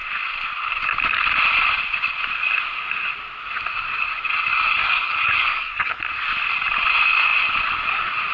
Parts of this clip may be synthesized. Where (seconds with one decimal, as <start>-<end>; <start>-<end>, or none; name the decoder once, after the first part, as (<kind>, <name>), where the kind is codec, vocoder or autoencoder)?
4.8-6.0 (codec, DAC)